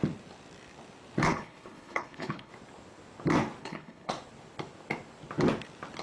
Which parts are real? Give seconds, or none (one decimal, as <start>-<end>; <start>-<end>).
0.0-1.3; 2.5-3.6; 4.1-6.0